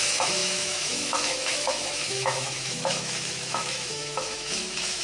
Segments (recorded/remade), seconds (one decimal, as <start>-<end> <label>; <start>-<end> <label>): 0.0-5.0 remade